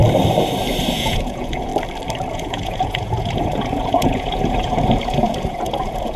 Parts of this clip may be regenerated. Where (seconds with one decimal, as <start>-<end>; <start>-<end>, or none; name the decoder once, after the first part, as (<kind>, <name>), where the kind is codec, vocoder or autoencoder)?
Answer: 0.9-1.7 (vocoder, Vocos); 2.3-6.2